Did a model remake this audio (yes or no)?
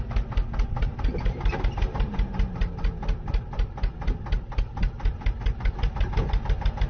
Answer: no